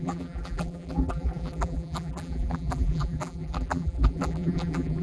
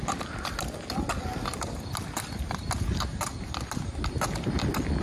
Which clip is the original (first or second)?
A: second